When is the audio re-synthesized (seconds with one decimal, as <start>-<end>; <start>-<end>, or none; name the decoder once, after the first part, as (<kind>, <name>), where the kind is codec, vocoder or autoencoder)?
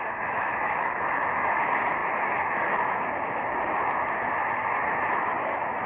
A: 0.0-5.9 (autoencoder, DAC-VAE)